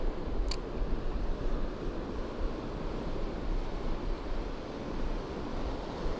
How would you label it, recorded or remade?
recorded